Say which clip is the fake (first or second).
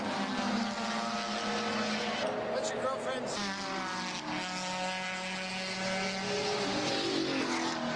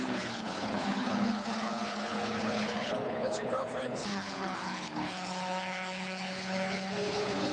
second